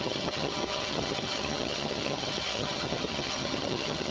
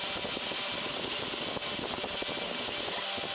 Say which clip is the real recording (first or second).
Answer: second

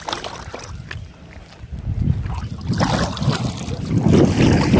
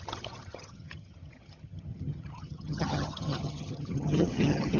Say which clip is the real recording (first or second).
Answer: first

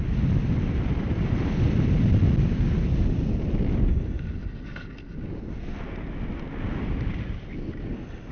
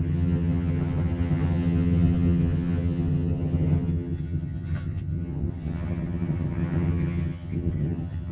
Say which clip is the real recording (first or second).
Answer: first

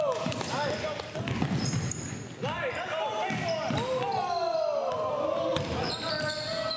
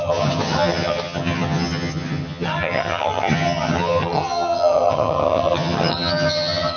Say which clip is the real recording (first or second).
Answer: first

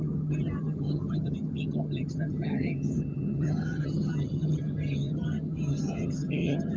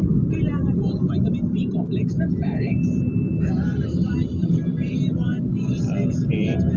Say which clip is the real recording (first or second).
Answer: second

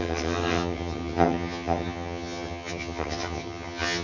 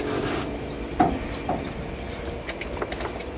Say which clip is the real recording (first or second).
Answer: second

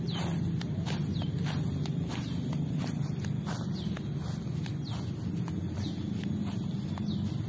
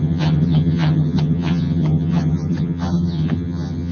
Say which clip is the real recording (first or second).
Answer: first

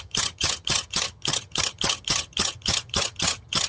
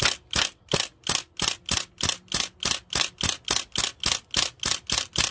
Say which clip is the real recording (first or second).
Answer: second